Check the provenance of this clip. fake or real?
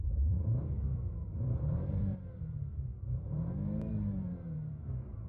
fake